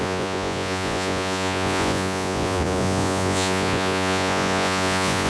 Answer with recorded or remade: remade